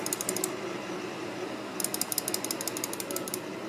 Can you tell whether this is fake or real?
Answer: real